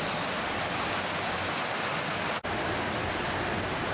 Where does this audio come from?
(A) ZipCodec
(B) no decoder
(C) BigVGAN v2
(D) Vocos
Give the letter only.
B